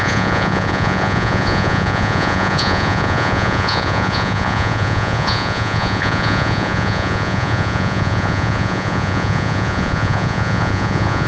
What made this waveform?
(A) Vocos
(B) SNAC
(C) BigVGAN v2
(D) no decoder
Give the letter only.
A